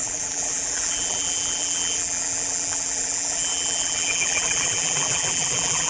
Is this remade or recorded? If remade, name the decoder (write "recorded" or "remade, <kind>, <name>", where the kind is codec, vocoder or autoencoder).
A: remade, vocoder, BigVGAN v2